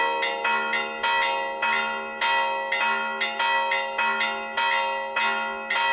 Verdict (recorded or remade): recorded